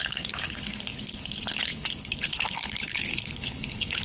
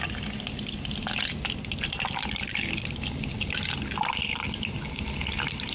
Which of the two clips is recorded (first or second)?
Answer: second